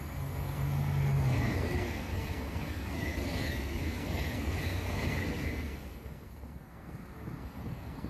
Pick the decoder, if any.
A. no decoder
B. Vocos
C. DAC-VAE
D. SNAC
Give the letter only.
D